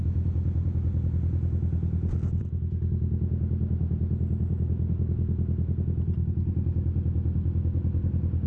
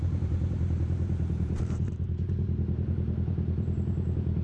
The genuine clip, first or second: first